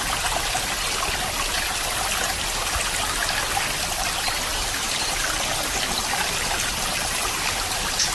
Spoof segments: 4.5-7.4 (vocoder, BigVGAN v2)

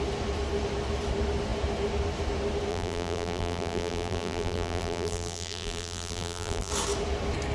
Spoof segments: 2.7-6.7 (vocoder, BigVGAN v2)

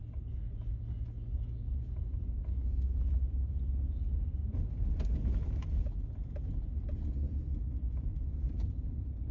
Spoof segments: none

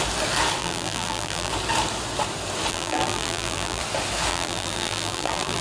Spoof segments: 0.6-1.5 (vocoder, BigVGAN v2); 2.7-3.8; 4.3-5.6

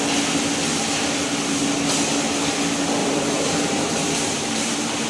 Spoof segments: 0.7-1.6 (vocoder, BigVGAN v2); 3.0-5.1

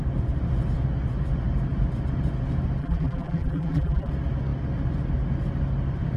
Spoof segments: 2.8-4.1 (vocoder, BigVGAN v2)

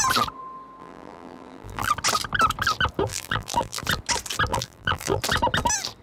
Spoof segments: 0.8-1.9 (vocoder, BigVGAN v2); 3.1-3.8; 4.5-5.2

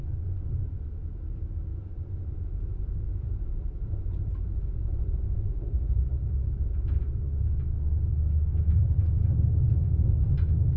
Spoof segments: 1.7-6.0 (vocoder, BigVGAN v2)